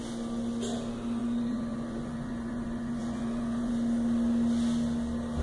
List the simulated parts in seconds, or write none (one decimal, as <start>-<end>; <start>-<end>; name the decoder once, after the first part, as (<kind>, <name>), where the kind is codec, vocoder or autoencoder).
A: 1.2-3.7 (vocoder, Vocos)